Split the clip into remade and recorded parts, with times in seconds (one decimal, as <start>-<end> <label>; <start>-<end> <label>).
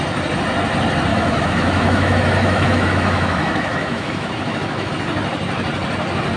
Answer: 0.0-1.1 recorded; 1.1-4.9 remade; 4.9-6.4 recorded